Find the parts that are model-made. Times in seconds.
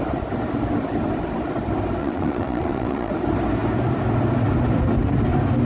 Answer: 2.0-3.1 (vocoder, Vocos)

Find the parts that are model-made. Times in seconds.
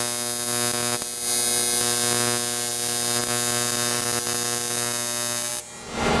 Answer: none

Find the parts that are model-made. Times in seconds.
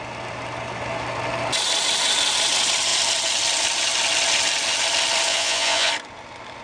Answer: 5.3-5.9 (vocoder, Vocos)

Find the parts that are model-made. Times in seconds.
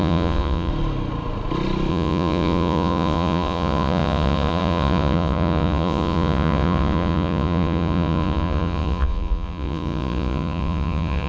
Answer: 0.0-0.7 (vocoder, Vocos); 1.9-11.3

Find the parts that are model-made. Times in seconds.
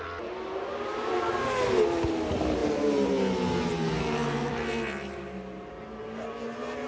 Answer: none